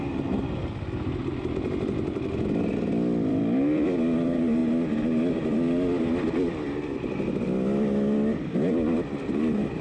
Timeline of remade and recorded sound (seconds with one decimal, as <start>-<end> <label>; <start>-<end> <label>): 0.0-4.6 remade; 4.6-5.3 recorded; 5.3-9.8 remade